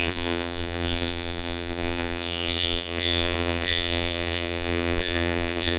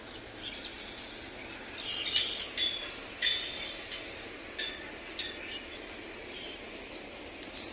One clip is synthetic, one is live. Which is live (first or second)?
second